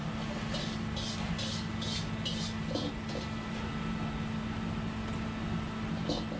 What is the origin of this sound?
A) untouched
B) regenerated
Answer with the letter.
A